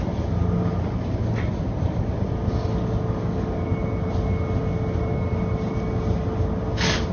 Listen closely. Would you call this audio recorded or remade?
recorded